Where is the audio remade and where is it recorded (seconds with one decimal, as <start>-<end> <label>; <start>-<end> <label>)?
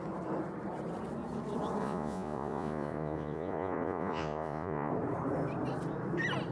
0.0-1.8 recorded; 1.8-4.9 remade; 4.9-6.5 recorded